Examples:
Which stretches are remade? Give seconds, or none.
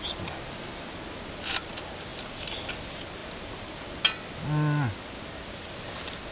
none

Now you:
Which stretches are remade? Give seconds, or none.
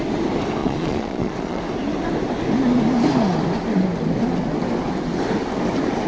0.6-1.6 (vocoder, Vocos)